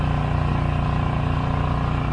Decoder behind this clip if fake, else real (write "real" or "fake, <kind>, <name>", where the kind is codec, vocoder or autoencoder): real